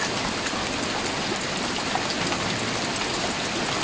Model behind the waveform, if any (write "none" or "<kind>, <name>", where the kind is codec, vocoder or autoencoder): none